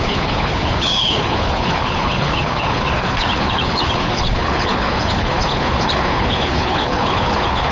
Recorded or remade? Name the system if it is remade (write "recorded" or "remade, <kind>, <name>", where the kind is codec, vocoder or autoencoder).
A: remade, codec, HILCodec